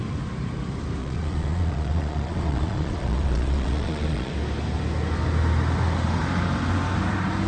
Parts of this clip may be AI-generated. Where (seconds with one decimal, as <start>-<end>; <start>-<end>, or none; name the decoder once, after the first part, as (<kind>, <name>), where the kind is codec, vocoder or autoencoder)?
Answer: 1.0-4.3 (vocoder, Vocos)